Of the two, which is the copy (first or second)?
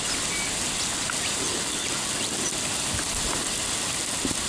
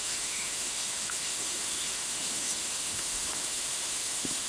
second